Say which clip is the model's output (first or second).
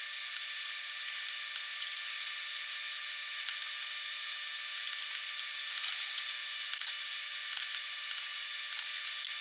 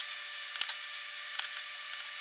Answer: second